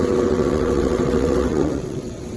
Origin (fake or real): fake